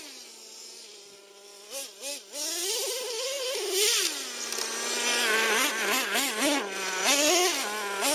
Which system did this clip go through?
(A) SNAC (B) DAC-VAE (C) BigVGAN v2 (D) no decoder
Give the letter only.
D